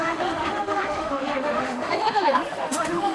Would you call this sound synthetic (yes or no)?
yes